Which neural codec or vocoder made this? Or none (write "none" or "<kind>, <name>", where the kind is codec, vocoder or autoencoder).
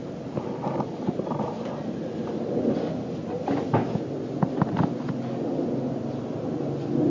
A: none